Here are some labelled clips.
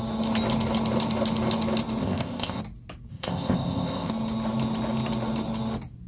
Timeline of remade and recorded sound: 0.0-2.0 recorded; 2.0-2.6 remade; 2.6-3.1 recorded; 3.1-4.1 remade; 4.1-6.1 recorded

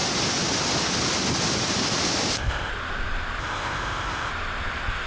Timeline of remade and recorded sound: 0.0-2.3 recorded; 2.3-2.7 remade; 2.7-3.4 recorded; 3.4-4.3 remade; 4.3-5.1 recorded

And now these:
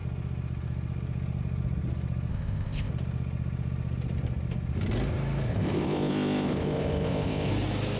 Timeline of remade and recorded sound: 0.0-2.3 recorded; 2.3-2.9 remade; 2.9-5.5 recorded; 5.5-7.5 remade; 7.5-8.0 recorded

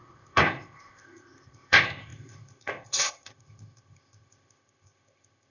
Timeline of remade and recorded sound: 0.0-5.5 remade

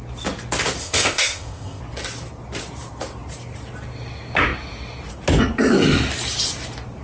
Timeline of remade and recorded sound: 0.0-0.8 recorded; 0.8-1.8 remade; 1.8-7.0 recorded

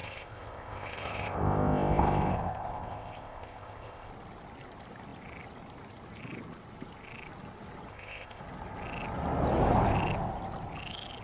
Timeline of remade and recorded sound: 0.0-4.1 remade; 4.1-7.9 recorded; 7.9-8.4 remade; 8.4-11.2 recorded

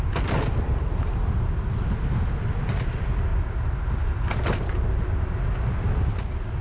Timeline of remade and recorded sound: 0.0-6.6 recorded

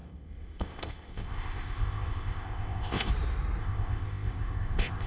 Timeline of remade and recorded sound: 0.0-3.1 remade; 3.1-3.6 recorded; 3.6-5.1 remade